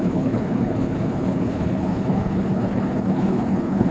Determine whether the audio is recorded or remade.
remade